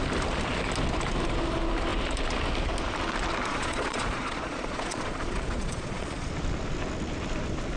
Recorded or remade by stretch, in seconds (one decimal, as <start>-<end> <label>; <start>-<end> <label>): 0.0-3.5 recorded; 3.5-6.3 remade; 6.3-7.8 recorded

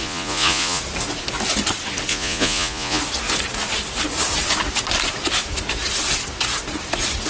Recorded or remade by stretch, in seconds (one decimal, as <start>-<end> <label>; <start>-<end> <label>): 0.0-0.8 remade; 0.8-2.1 recorded; 2.1-3.0 remade; 3.0-7.3 recorded